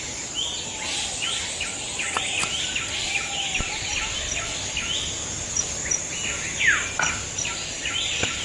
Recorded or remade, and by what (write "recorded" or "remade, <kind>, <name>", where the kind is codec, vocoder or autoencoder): recorded